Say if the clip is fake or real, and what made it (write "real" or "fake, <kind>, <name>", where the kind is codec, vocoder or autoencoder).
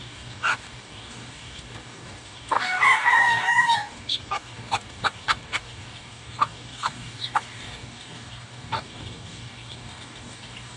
fake, codec, DAC